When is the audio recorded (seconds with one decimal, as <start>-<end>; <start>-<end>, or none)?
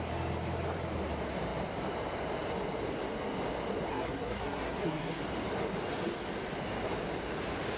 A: 0.0-3.9; 5.2-7.8